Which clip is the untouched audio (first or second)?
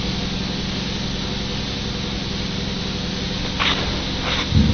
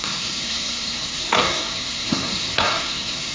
first